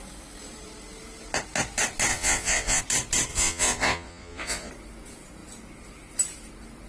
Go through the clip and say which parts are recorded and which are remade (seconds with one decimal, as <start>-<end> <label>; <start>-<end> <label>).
0.0-2.1 recorded; 2.1-2.8 remade; 2.8-3.3 recorded; 3.3-4.7 remade; 4.7-6.9 recorded